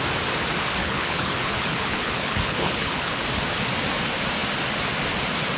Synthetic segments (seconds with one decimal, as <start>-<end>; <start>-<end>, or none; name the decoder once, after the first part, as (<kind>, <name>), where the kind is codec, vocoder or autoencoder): 0.8-3.2 (codec, HILCodec)